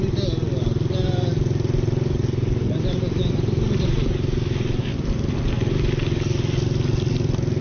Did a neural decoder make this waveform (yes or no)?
no